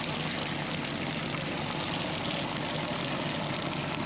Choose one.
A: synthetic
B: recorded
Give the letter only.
B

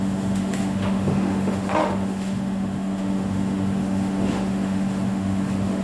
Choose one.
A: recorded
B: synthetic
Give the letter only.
B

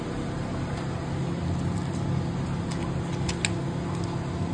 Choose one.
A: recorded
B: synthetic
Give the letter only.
A